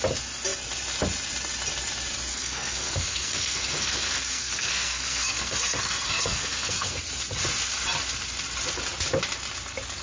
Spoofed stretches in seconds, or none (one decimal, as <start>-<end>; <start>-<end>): 2.3-7.0

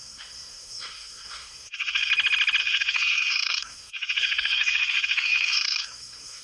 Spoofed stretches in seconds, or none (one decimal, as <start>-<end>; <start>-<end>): 0.0-2.1; 2.6-6.4

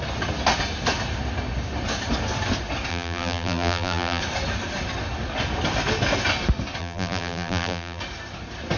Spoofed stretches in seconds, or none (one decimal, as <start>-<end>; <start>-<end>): 2.9-4.2; 6.8-8.0

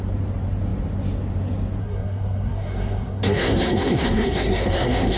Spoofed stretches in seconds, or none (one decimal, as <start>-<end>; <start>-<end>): 1.8-5.2

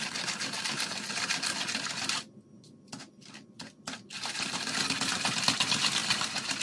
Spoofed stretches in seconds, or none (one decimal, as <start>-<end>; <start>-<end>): none

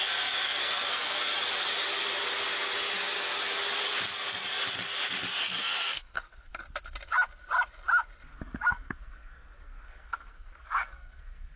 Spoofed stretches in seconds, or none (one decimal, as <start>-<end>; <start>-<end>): 0.0-1.3; 5.4-6.5; 8.7-11.6

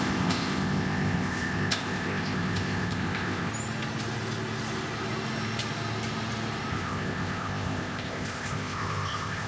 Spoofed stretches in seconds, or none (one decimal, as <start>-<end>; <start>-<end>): 0.0-3.5; 6.7-9.5